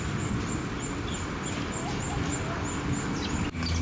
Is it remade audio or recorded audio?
recorded